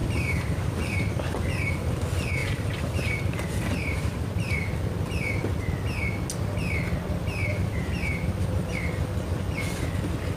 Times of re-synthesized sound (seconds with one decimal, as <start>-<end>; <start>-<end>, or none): 0.0-1.7; 2.4-4.8; 7.5-8.8